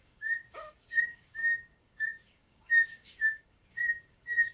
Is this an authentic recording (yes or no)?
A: no